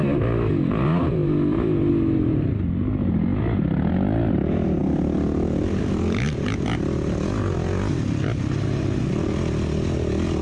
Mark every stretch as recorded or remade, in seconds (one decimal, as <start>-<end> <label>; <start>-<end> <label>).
0.0-10.4 recorded